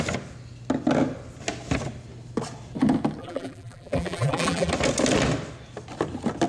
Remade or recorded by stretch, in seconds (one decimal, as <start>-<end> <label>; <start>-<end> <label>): 0.0-3.2 recorded; 3.2-4.7 remade; 4.7-6.5 recorded